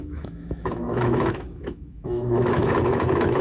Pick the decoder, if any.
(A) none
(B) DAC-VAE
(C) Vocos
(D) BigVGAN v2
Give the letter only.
B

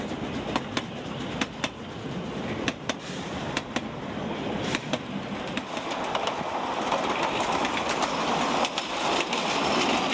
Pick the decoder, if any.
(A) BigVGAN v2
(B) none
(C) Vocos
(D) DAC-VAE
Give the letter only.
A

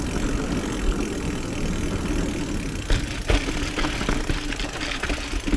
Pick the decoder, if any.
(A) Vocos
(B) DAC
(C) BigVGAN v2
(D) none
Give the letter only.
D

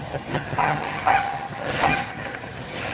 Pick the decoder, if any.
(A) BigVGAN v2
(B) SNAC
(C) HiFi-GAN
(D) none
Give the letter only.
C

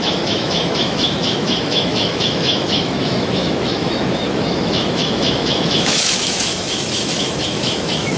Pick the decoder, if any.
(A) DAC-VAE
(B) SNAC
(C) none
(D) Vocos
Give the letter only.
A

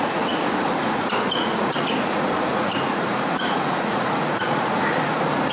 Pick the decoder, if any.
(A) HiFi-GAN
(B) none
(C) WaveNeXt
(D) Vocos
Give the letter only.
D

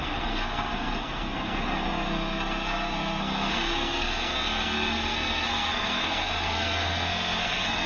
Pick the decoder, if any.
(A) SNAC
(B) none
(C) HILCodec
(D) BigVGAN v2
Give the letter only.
A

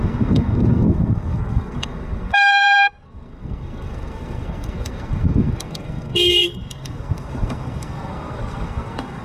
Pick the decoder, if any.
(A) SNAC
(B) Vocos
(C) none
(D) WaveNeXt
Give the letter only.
A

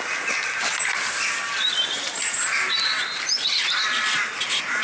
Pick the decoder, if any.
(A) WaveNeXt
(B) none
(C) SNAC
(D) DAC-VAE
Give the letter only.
B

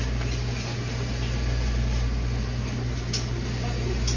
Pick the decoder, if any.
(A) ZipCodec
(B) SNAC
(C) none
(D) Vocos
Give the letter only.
C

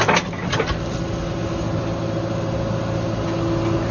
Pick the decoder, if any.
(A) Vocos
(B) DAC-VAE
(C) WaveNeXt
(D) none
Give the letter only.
D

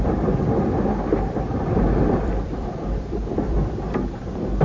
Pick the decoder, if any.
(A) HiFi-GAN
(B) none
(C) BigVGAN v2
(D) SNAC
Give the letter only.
C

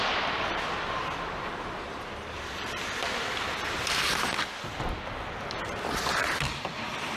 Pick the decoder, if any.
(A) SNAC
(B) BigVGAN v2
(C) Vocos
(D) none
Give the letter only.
B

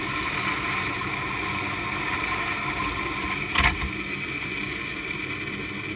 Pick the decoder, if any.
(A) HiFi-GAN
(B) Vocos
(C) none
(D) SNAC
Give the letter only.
C